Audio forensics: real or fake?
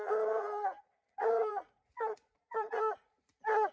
fake